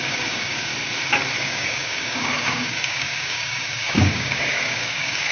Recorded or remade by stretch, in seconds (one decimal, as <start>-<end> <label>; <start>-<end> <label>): 0.0-0.7 remade; 0.7-1.4 recorded; 1.4-5.3 remade